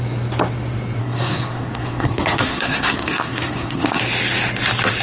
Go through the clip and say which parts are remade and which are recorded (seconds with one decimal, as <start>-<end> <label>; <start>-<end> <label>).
0.0-1.0 recorded; 1.0-4.0 remade; 4.0-5.0 recorded